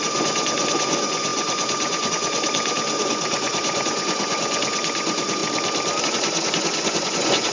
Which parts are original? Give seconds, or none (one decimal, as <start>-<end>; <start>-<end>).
5.4-6.0